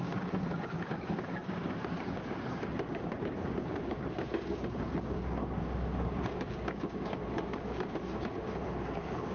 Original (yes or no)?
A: no